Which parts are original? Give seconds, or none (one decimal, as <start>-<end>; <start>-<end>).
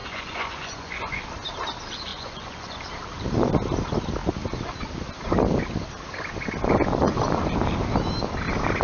1.2-2.1; 2.8-8.8